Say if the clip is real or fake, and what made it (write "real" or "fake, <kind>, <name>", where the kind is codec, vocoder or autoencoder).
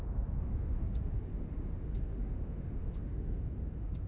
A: fake, autoencoder, DAC-VAE